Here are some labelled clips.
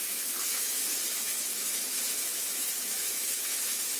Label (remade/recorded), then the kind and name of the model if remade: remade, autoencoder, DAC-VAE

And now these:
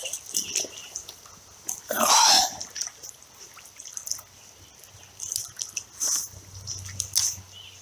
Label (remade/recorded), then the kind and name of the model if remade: recorded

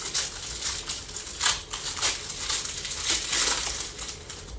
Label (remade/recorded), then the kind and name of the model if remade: recorded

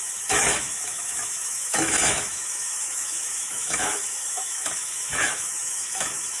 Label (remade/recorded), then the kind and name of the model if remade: remade, autoencoder, DAC-VAE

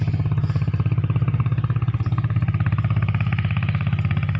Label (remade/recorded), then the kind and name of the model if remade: recorded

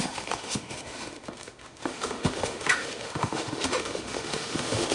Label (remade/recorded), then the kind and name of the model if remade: remade, autoencoder, DAC-VAE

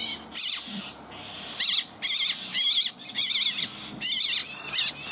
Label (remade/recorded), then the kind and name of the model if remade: recorded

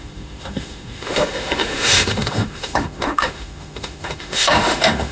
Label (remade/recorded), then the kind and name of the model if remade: remade, autoencoder, DAC-VAE